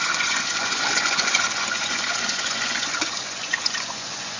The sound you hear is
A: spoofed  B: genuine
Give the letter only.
A